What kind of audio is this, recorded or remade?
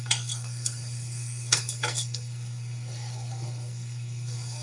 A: remade